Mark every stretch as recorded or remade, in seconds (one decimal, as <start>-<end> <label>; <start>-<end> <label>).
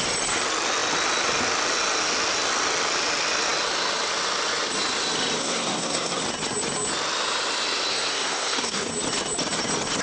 0.0-5.4 recorded; 5.4-6.2 remade; 6.2-7.9 recorded; 7.9-8.9 remade; 8.9-10.0 recorded